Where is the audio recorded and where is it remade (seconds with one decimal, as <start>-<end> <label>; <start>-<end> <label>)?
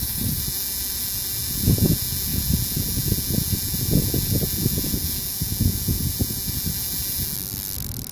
0.0-8.1 recorded